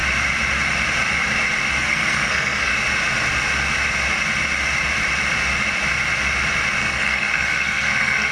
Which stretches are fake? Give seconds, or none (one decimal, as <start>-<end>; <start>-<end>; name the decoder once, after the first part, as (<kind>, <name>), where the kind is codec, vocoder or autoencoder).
1.8-2.7 (codec, SNAC); 6.8-8.3